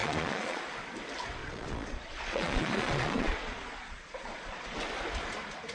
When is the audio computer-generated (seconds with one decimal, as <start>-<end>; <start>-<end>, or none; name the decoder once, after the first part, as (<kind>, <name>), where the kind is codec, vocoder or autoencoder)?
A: 0.0-0.6 (vocoder, Vocos); 1.4-4.8